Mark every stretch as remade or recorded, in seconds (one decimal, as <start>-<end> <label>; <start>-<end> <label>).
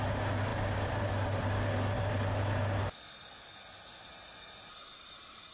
0.0-5.5 recorded